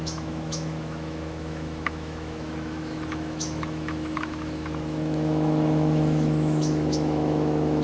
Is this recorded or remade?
remade